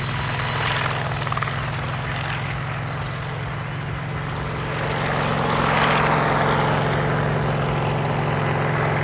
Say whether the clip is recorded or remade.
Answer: recorded